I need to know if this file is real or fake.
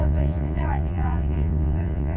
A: fake